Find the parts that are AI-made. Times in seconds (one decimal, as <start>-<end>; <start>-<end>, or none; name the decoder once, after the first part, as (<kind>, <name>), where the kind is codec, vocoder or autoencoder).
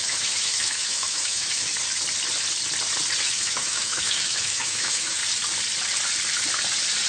0.0-1.7 (autoencoder, DAC-VAE); 3.2-5.2